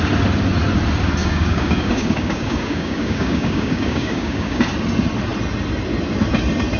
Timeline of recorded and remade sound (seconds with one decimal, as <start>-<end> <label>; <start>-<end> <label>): 0.0-1.2 recorded; 1.2-4.6 remade; 4.6-6.8 recorded